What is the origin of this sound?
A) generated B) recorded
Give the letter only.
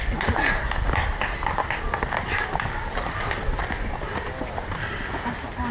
B